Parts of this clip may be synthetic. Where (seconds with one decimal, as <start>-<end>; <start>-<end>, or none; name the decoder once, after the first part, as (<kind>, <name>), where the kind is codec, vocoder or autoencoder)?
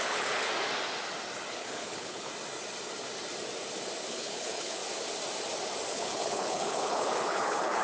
0.0-0.5 (codec, HILCodec); 1.5-2.3; 4.1-4.8; 5.9-7.8